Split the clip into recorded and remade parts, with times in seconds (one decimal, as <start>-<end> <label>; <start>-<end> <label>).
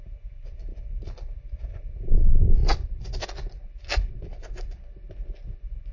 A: 0.0-5.9 recorded